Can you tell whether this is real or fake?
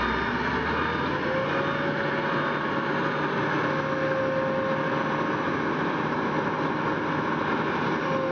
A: real